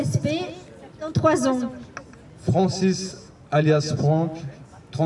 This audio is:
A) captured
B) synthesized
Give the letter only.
A